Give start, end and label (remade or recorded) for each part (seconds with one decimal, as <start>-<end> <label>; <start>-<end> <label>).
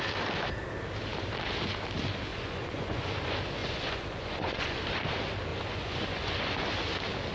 0.0-2.3 recorded; 2.3-3.1 remade; 3.1-3.6 recorded; 3.6-4.8 remade; 4.8-5.5 recorded; 5.5-6.5 remade; 6.5-7.3 recorded